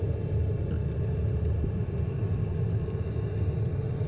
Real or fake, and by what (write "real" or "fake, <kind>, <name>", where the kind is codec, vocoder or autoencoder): real